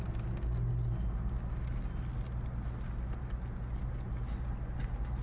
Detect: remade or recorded recorded